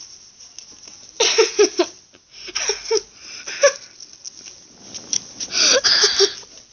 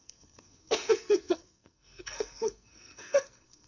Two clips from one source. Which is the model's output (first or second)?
second